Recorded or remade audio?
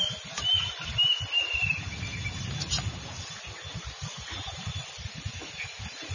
recorded